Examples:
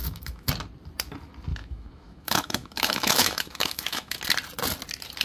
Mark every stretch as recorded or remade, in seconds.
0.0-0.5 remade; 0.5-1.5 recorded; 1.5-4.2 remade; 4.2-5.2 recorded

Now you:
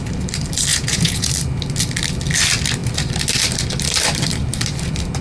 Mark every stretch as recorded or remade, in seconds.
0.0-0.7 recorded; 0.7-1.3 remade; 1.3-5.2 recorded

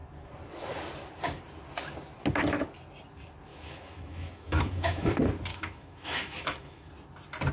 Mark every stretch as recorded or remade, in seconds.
0.0-3.5 recorded; 3.5-5.1 remade; 5.1-5.5 recorded; 5.5-6.9 remade; 6.9-7.5 recorded